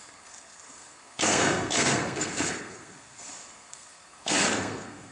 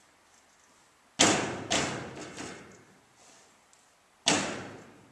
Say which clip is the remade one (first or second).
first